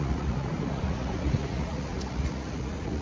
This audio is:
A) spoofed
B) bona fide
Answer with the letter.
A